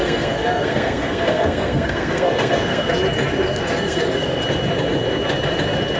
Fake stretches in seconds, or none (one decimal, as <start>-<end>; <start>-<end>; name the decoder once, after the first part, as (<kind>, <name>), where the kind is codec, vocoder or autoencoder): 0.0-2.9 (codec, SNAC); 3.6-4.4